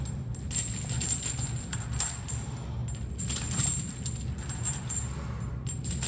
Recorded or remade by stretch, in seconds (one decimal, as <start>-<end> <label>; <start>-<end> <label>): 0.0-6.1 recorded